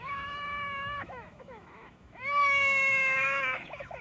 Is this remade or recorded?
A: remade